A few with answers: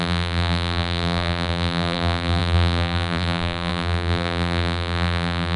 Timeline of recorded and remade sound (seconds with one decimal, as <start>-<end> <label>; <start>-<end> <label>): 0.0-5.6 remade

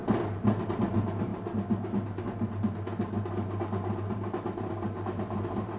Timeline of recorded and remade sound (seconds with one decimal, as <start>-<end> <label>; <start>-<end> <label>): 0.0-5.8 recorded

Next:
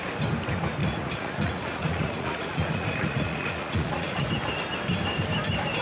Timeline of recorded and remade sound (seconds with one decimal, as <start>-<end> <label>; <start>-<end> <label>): 0.0-0.8 recorded; 0.8-4.3 remade; 4.3-5.8 recorded